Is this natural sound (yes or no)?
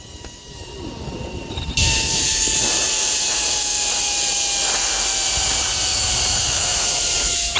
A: yes